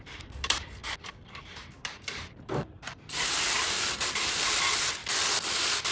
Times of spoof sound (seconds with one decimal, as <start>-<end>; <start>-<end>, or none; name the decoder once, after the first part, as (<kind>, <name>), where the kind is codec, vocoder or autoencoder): 0.0-5.0 (vocoder, BigVGAN v2)